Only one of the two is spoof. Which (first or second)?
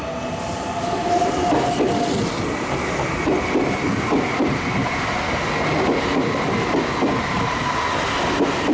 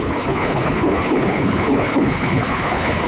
second